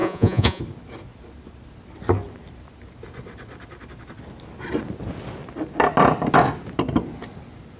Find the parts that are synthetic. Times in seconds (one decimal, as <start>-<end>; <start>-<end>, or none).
0.0-0.6